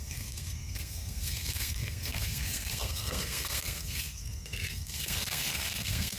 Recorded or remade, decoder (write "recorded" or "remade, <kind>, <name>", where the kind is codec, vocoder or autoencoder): remade, codec, SNAC